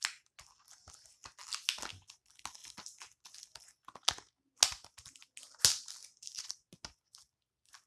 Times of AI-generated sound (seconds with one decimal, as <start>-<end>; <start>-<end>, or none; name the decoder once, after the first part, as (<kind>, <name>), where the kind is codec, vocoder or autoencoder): none